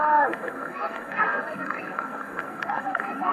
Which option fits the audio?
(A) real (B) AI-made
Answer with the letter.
B